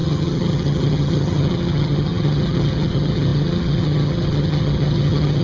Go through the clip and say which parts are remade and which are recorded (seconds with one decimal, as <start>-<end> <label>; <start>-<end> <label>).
0.0-5.4 remade